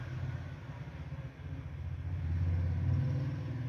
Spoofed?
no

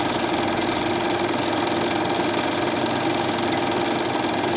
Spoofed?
no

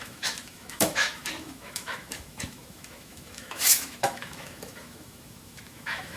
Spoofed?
yes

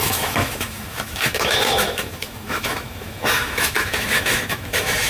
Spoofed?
yes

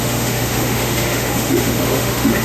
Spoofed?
yes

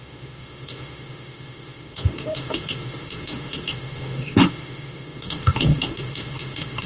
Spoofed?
yes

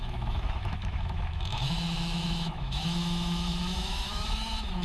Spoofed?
yes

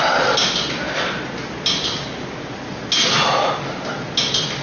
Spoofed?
no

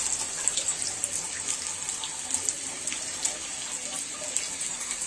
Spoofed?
no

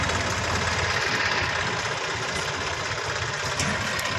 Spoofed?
no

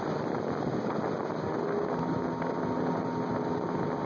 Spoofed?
no